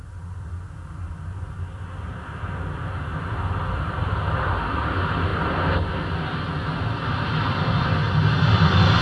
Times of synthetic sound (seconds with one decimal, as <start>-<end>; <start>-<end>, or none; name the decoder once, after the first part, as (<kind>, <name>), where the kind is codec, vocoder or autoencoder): none